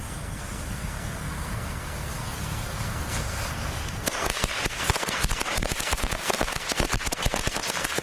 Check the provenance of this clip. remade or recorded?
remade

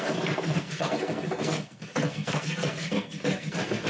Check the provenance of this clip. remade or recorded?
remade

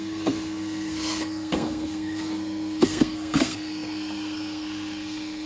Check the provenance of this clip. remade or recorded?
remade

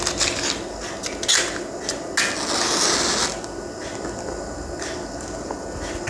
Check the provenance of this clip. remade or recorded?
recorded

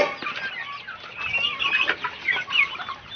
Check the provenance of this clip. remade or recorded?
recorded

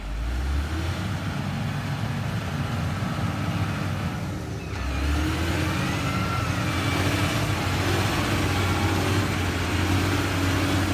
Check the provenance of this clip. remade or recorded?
recorded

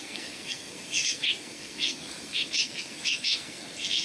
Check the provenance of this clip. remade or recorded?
remade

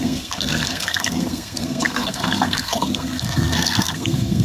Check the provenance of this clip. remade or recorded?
remade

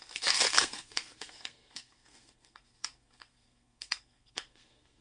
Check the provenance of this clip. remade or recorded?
remade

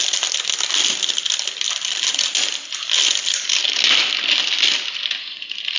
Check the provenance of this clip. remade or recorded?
recorded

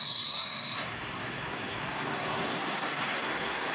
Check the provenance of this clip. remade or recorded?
remade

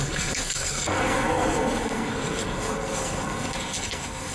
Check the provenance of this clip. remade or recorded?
remade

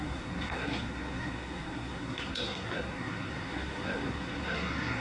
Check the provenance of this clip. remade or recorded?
remade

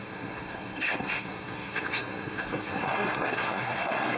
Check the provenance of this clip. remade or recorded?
remade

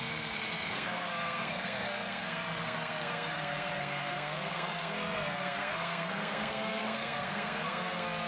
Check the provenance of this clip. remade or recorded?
remade